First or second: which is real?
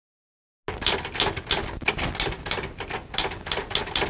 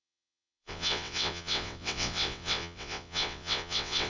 first